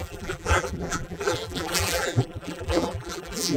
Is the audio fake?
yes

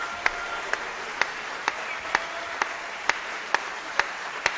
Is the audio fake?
yes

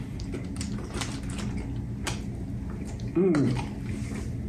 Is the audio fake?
no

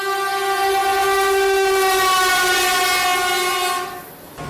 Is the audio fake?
no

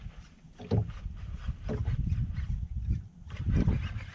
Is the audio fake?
no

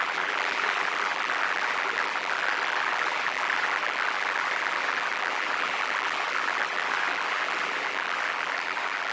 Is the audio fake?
yes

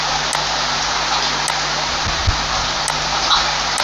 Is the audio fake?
no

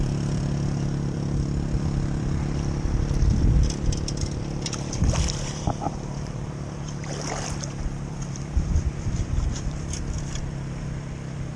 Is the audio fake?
yes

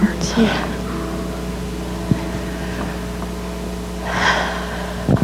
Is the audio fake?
no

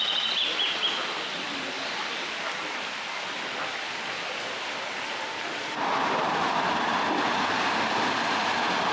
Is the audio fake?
yes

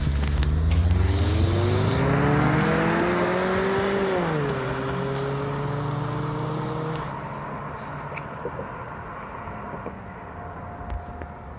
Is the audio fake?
no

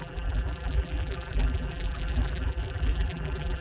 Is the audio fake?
yes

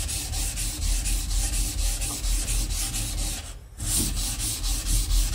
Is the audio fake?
no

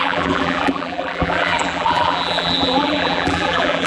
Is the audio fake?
yes